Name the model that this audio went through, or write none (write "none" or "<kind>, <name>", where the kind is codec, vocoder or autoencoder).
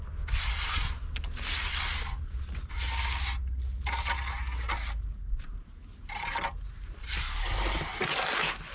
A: none